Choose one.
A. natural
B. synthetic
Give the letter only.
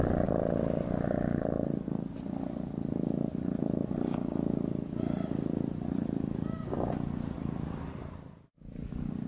A